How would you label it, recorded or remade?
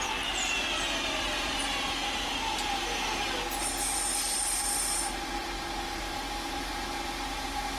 recorded